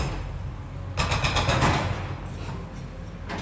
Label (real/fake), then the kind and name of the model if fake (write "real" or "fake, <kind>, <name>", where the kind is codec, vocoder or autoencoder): real